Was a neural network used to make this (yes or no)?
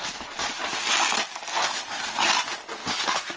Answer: no